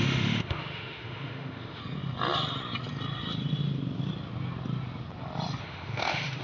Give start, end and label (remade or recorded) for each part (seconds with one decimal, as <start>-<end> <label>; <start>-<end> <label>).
0.0-1.8 remade; 1.8-5.6 recorded; 5.6-6.4 remade